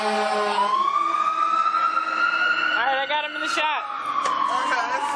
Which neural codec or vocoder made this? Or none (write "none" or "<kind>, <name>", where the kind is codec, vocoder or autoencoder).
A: none